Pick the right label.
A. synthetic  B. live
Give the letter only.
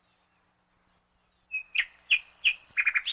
B